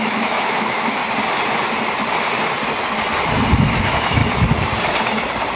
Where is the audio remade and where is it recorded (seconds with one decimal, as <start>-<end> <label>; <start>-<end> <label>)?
0.0-1.0 remade; 1.0-3.7 recorded; 3.7-4.2 remade; 4.2-5.6 recorded